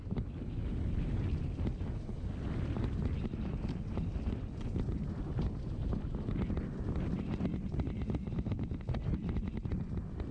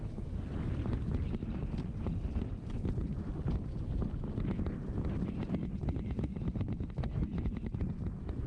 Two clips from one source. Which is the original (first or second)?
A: first